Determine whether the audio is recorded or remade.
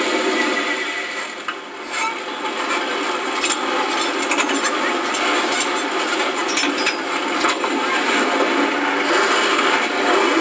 recorded